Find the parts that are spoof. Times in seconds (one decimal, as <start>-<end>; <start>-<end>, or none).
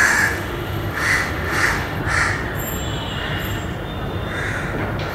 0.0-2.0